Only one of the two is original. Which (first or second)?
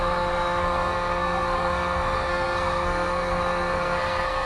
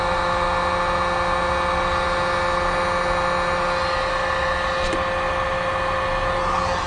second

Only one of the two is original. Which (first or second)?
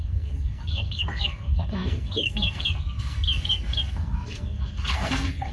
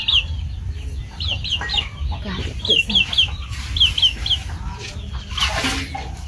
second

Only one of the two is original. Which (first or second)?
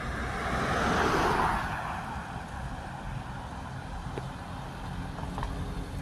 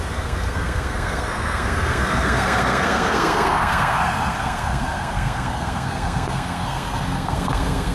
first